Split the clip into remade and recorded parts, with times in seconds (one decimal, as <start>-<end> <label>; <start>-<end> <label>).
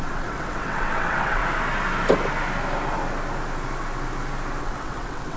0.0-1.4 remade; 1.4-4.6 recorded; 4.6-5.4 remade